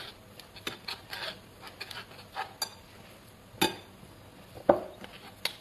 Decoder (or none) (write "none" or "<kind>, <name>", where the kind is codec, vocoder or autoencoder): none